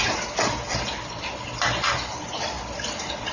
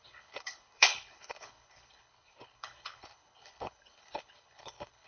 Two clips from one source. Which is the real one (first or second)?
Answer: first